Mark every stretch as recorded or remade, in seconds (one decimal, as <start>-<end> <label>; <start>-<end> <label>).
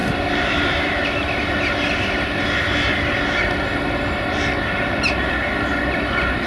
0.0-6.5 recorded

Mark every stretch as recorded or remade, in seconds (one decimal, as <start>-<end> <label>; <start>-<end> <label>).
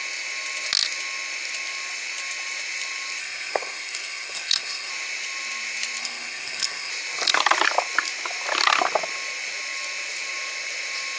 0.0-3.2 recorded; 3.2-4.9 remade; 4.9-6.0 recorded; 6.0-6.9 remade; 6.9-11.2 recorded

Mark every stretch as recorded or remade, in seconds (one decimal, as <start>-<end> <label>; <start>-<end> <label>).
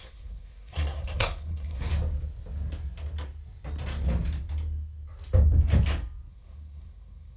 0.0-1.9 remade; 1.9-6.3 recorded; 6.3-7.4 remade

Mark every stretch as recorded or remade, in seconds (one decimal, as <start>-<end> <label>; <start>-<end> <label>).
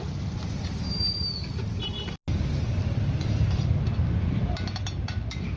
0.0-5.6 recorded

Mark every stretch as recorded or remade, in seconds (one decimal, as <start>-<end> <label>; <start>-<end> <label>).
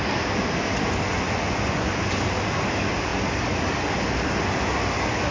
0.0-1.1 recorded; 1.1-1.9 remade; 1.9-5.3 recorded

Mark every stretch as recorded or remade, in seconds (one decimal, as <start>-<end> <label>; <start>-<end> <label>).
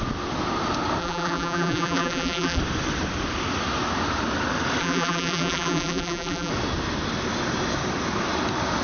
0.0-1.0 recorded; 1.0-2.6 remade; 2.6-4.8 recorded; 4.8-6.5 remade; 6.5-8.8 recorded